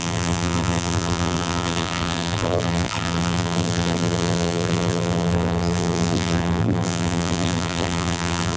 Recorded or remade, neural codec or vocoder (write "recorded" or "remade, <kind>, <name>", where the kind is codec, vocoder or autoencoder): remade, vocoder, BigVGAN v2